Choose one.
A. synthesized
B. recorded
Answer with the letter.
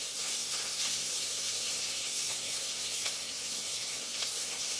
A